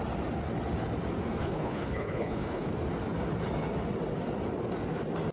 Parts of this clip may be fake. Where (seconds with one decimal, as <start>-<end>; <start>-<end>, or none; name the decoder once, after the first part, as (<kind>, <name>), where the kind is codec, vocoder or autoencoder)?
1.4-2.7 (codec, HILCodec)